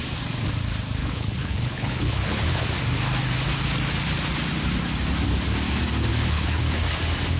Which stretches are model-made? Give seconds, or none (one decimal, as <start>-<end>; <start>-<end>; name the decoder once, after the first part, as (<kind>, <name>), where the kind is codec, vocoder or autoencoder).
1.0-2.6 (codec, HILCodec); 6.1-6.6

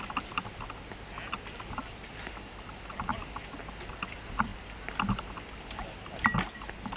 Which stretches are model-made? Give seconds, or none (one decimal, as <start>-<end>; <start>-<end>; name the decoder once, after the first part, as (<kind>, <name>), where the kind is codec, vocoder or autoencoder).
none

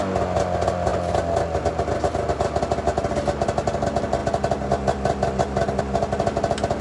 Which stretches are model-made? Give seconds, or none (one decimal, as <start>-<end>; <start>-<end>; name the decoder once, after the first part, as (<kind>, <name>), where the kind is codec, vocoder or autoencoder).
none

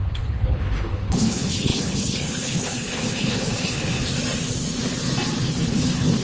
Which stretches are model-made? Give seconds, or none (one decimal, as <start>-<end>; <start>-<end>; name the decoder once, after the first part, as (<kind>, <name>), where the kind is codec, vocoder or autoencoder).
0.0-4.1 (codec, HILCodec); 5.4-6.2

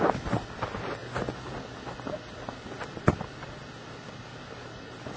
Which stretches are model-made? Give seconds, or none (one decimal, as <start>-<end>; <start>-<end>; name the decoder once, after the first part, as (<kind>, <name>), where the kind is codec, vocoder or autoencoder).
none